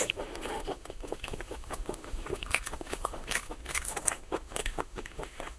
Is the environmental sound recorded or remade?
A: remade